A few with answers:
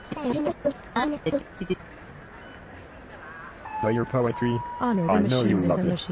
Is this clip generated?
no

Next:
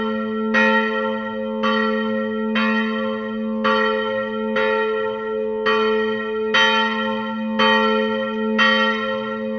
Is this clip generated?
no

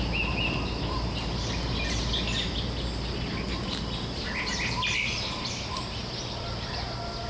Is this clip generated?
no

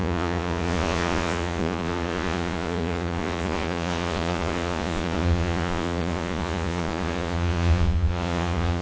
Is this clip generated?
yes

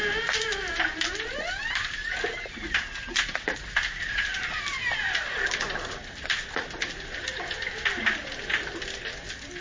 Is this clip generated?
no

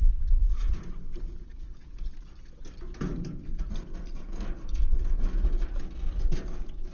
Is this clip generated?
no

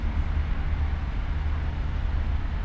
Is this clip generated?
no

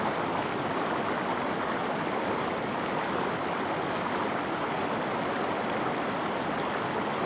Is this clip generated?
no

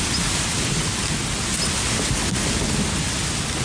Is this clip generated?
no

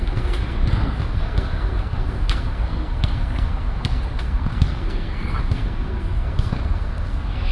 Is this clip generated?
yes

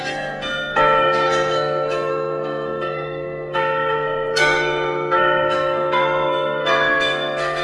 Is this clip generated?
yes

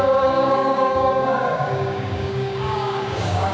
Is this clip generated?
yes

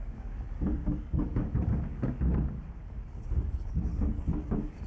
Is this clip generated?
yes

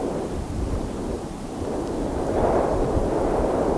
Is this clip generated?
no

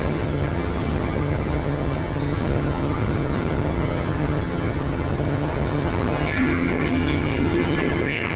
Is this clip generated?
yes